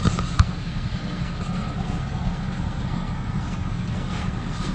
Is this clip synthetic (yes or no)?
yes